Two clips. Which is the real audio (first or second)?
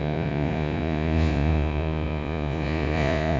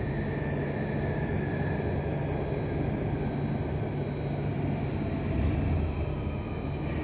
second